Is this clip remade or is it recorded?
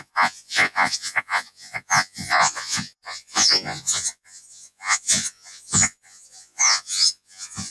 remade